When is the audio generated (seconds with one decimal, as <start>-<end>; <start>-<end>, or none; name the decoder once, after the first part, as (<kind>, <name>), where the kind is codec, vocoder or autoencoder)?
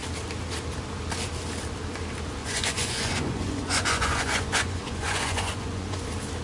2.4-6.0 (vocoder, Vocos)